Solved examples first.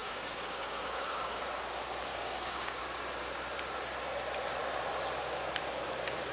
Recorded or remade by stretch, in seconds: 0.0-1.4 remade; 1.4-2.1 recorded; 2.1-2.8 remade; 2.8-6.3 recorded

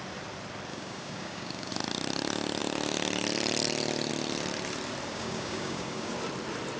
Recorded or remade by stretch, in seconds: 0.0-0.7 recorded; 0.7-1.7 remade; 1.7-5.1 recorded; 5.1-6.1 remade; 6.1-6.8 recorded

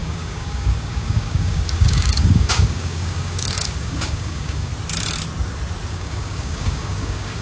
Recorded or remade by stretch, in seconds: 0.0-4.7 remade; 4.7-5.9 recorded; 5.9-7.4 remade

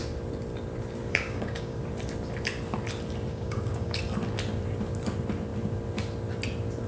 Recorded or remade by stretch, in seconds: 0.0-1.1 recorded; 1.1-1.8 remade; 1.8-3.3 recorded; 3.3-4.0 remade; 4.0-6.9 recorded

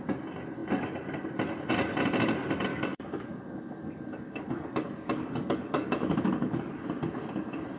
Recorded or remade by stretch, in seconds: 0.0-2.7 recorded; 2.7-6.7 remade; 6.7-7.8 recorded